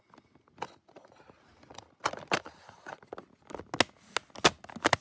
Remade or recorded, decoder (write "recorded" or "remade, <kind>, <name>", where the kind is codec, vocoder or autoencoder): recorded